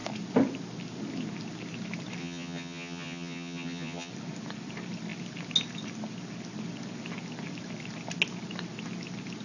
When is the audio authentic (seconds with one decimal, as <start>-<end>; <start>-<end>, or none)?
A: 0.0-2.2; 4.1-9.4